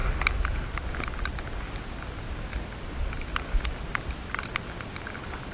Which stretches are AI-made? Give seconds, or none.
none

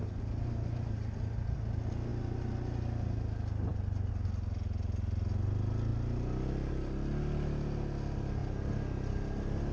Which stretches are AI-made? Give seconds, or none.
none

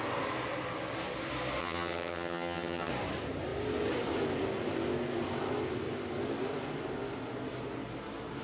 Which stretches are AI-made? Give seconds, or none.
1.6-2.9

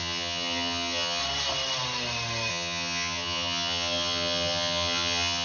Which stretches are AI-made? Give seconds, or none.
0.0-1.2; 2.5-5.4

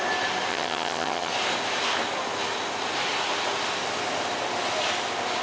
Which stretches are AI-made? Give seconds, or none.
0.5-1.3

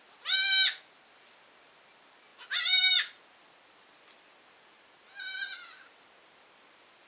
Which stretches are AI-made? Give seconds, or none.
none